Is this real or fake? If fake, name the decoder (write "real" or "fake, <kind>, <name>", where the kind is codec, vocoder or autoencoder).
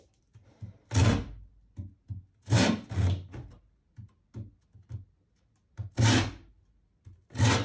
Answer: real